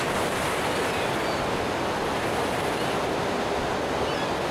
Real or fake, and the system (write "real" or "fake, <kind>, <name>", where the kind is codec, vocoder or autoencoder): real